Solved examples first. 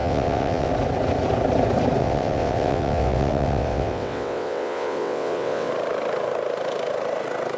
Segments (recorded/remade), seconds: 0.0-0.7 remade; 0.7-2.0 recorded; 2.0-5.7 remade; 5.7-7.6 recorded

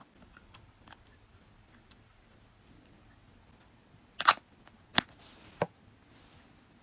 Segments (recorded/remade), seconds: 0.0-6.8 recorded

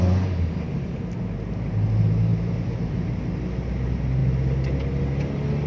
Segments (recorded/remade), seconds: 0.0-5.7 recorded

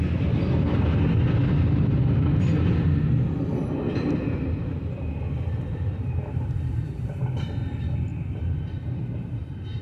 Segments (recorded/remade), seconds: 0.0-8.1 recorded; 8.1-8.7 remade; 8.7-9.8 recorded

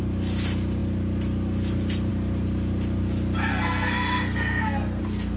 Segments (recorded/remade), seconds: 0.0-3.5 recorded; 3.5-5.0 remade; 5.0-5.4 recorded

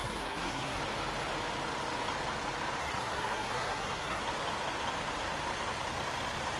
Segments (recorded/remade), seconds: 0.0-0.8 remade; 0.8-2.8 recorded; 2.8-4.2 remade; 4.2-6.6 recorded

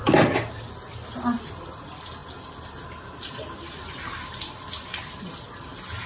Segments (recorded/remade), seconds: 0.0-6.1 recorded